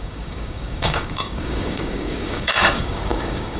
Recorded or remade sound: remade